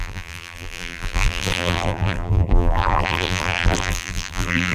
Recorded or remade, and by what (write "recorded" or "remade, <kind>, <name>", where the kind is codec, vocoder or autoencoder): remade, vocoder, BigVGAN v2